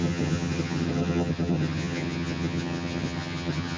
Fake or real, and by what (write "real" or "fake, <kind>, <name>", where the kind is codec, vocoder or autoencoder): fake, vocoder, HiFi-GAN